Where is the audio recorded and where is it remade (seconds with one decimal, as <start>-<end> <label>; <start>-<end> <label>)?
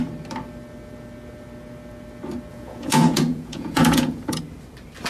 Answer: 0.0-2.5 recorded; 2.5-4.4 remade; 4.4-5.1 recorded